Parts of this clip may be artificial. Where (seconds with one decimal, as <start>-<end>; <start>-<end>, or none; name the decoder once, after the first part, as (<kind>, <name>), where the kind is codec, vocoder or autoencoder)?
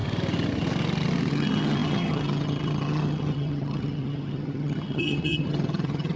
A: 1.3-6.2 (vocoder, HiFi-GAN)